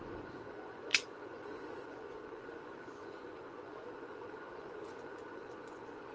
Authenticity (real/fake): fake